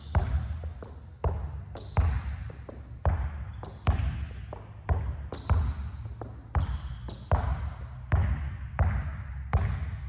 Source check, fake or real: real